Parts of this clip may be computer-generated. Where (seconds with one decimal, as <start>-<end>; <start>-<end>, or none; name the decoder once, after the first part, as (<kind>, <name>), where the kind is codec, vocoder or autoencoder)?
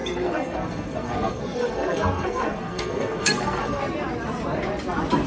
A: 0.0-3.8 (codec, SNAC)